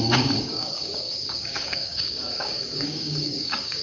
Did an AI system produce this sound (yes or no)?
yes